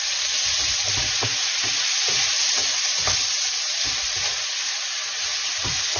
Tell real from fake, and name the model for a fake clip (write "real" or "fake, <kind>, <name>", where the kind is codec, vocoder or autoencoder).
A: real